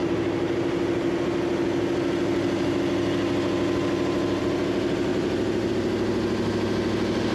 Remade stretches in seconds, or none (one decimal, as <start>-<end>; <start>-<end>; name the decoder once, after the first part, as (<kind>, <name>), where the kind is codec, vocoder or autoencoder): none